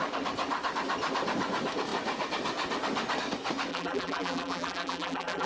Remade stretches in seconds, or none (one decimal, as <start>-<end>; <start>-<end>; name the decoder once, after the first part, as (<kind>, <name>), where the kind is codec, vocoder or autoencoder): 3.7-5.5 (vocoder, BigVGAN v2)